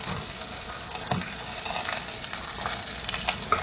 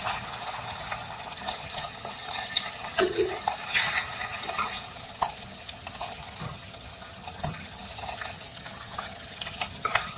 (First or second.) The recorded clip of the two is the first